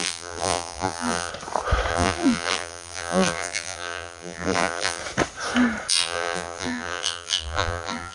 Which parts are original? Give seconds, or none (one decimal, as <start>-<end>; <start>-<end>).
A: 1.3-1.9; 5.0-5.9